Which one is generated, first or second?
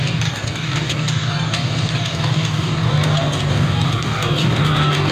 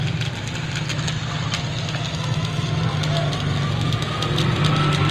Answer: first